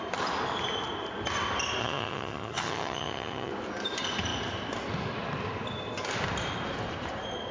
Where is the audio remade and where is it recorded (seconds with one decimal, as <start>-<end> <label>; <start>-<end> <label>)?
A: 0.0-1.8 recorded; 1.8-3.5 remade; 3.5-7.5 recorded